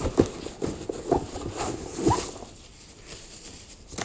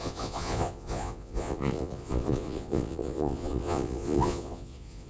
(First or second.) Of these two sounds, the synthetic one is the second